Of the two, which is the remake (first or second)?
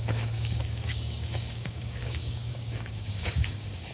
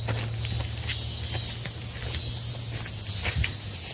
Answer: first